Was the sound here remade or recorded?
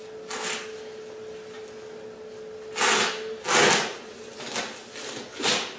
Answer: recorded